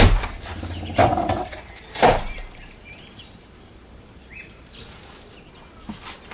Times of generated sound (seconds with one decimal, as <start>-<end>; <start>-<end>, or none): 1.1-4.9